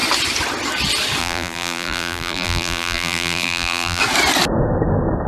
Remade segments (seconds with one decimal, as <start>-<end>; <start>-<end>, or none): 1.2-4.0